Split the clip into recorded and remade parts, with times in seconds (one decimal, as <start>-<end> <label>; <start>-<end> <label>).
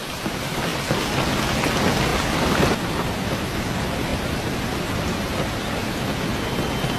0.0-2.1 recorded; 2.1-2.9 remade; 2.9-7.0 recorded